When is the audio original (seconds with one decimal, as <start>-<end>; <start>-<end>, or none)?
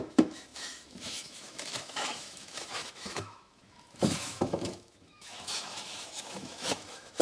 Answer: none